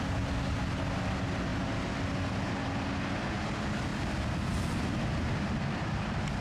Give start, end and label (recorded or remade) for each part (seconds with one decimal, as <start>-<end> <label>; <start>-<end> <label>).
0.0-1.5 recorded; 1.5-2.7 remade; 2.7-3.9 recorded; 3.9-4.9 remade; 4.9-6.4 recorded